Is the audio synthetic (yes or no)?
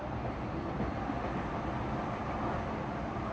no